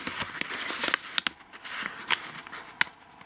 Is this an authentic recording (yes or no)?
yes